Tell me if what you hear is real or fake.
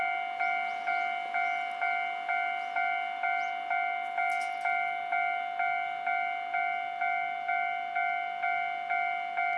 real